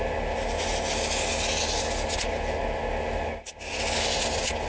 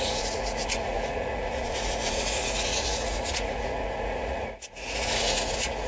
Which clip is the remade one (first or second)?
second